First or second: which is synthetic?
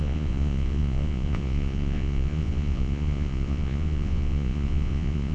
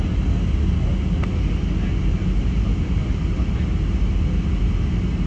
first